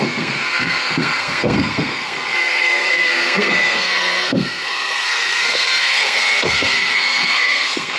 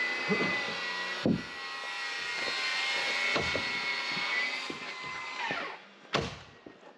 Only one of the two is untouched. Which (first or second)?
second